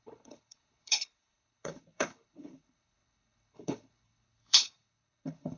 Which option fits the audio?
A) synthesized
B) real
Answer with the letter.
A